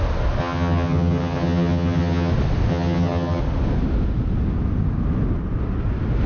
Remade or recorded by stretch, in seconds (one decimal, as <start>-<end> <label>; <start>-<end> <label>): 0.0-0.4 recorded; 0.4-2.3 remade; 2.3-2.7 recorded; 2.7-3.4 remade; 3.4-6.3 recorded